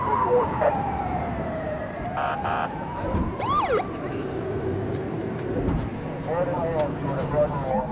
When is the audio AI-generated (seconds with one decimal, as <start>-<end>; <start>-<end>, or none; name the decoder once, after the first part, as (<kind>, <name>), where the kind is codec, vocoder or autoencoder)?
0.0-5.9 (vocoder, BigVGAN v2)